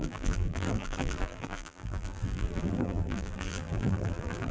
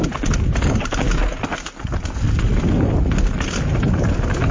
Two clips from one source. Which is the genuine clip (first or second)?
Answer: second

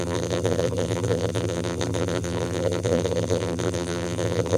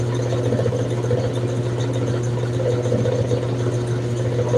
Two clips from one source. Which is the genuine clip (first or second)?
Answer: second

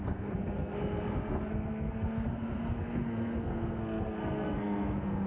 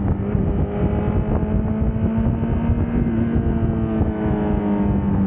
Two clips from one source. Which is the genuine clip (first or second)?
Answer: second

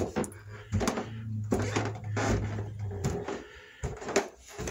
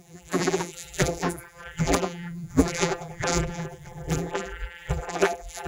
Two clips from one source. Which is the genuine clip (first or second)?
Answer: first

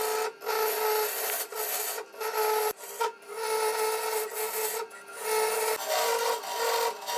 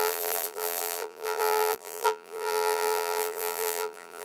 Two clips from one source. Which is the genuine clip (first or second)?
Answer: first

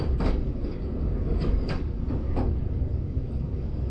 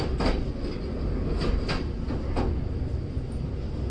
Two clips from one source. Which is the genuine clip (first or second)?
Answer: second